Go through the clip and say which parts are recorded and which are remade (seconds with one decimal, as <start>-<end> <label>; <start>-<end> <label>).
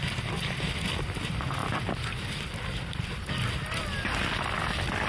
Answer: 0.0-0.9 remade; 0.9-5.1 recorded